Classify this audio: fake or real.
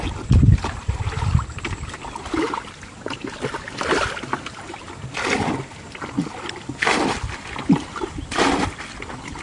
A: real